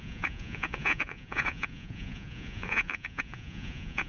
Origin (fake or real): fake